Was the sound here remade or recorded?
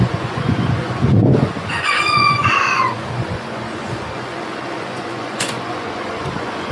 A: remade